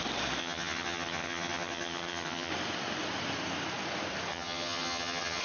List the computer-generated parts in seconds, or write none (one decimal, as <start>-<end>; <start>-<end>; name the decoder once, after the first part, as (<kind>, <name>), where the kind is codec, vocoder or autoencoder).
0.4-2.5 (vocoder, HiFi-GAN); 4.3-5.4